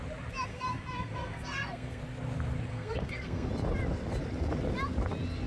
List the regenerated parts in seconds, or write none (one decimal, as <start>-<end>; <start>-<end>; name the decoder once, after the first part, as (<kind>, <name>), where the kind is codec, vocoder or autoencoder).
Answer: 0.5-2.0 (codec, SNAC); 2.7-3.5